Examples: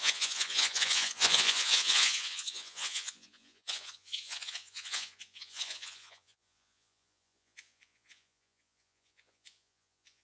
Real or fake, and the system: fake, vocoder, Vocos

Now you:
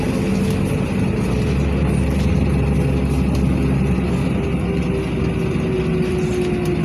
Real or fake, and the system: real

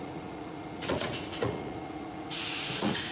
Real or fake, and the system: fake, vocoder, Vocos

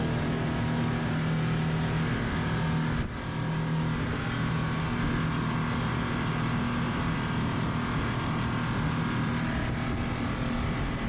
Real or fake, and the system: real